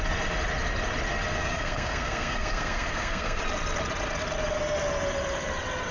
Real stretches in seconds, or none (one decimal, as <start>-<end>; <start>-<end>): 0.0-1.4; 3.4-5.9